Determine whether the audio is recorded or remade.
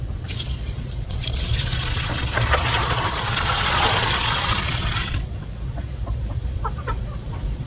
remade